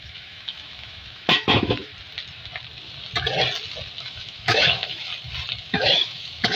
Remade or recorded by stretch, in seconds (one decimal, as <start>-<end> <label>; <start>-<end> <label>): 0.0-1.9 remade; 1.9-4.0 recorded; 4.0-5.1 remade; 5.1-5.6 recorded; 5.6-6.6 remade